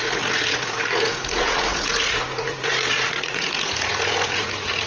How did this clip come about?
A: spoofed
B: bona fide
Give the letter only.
A